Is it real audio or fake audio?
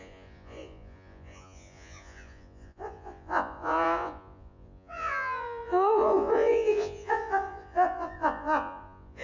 fake